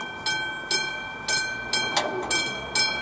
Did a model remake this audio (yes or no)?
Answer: no